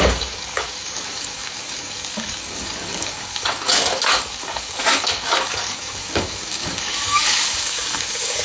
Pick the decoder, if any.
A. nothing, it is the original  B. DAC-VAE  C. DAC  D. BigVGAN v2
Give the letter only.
C